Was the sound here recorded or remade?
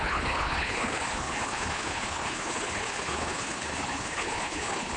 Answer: remade